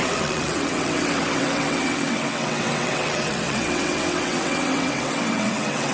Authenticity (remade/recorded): remade